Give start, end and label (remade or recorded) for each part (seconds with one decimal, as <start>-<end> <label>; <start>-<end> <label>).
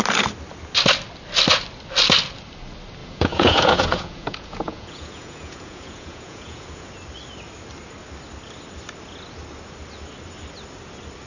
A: 0.0-3.0 recorded; 3.0-6.9 remade; 6.9-11.3 recorded